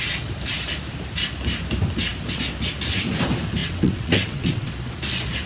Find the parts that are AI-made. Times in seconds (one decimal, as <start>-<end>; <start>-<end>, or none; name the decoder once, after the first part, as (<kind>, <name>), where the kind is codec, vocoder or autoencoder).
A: 3.6-4.7 (vocoder, WaveNeXt)